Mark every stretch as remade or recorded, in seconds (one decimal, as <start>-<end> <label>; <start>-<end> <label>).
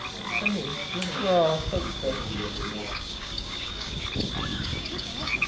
0.0-0.8 recorded; 0.8-4.0 remade; 4.0-4.5 recorded; 4.5-5.5 remade